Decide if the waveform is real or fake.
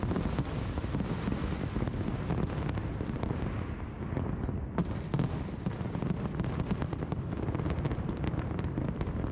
real